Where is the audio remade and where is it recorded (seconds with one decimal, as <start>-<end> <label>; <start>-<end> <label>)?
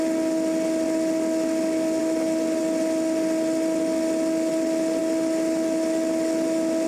0.0-6.9 recorded